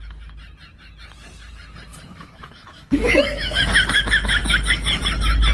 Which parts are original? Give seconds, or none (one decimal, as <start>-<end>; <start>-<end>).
0.0-1.9; 4.0-5.5